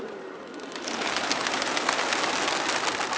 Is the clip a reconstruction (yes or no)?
no